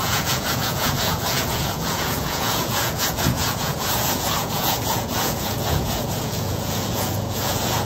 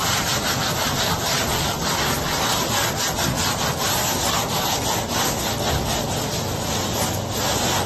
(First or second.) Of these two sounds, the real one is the second